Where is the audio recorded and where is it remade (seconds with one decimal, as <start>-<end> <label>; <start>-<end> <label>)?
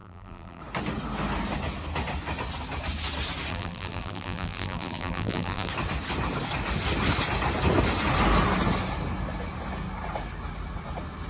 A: 0.0-0.6 remade; 0.6-3.5 recorded; 3.5-5.7 remade; 5.7-11.3 recorded